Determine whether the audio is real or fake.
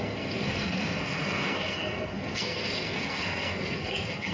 fake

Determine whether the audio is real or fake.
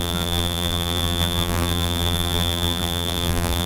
fake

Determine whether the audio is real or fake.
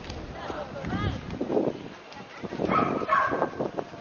real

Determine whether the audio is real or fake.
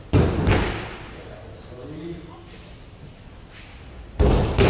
real